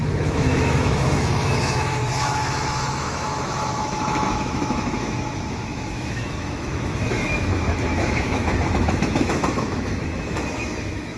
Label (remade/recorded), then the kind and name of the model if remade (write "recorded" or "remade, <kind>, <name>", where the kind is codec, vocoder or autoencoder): remade, autoencoder, DAC-VAE